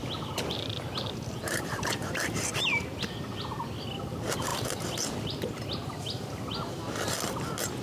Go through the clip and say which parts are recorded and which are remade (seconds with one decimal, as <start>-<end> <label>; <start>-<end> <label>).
0.0-7.8 recorded